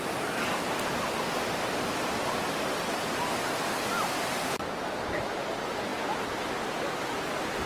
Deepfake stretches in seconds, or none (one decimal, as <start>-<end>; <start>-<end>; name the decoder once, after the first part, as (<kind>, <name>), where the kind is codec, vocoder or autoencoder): none